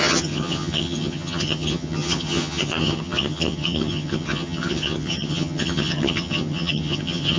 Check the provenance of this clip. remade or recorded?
remade